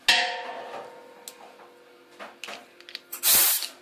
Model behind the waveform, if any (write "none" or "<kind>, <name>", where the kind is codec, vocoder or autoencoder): none